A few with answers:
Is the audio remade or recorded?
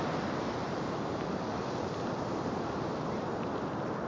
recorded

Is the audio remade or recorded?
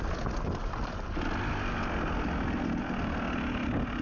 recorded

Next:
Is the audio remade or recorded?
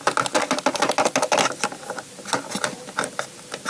recorded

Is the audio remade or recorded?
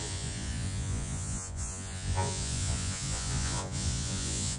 remade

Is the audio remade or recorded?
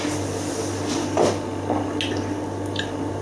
recorded